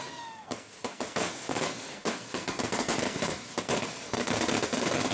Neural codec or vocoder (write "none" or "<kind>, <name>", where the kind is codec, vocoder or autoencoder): codec, SNAC